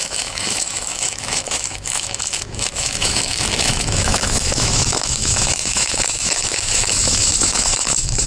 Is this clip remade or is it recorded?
remade